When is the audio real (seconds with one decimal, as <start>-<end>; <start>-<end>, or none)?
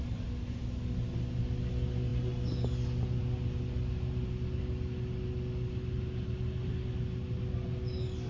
0.0-8.3